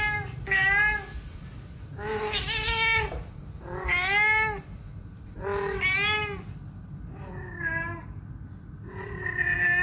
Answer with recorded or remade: recorded